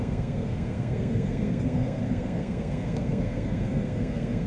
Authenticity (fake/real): fake